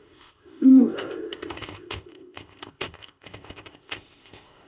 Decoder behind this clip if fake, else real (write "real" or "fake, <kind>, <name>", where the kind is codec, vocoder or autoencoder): fake, codec, ZipCodec